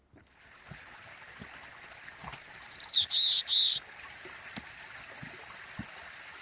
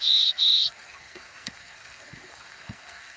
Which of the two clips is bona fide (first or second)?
first